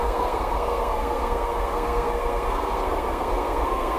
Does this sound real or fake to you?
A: fake